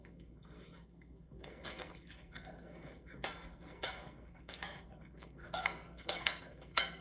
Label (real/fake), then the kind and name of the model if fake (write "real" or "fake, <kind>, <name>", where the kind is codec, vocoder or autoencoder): fake, codec, SNAC